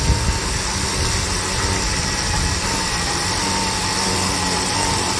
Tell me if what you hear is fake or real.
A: real